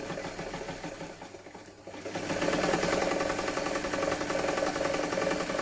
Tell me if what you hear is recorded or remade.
recorded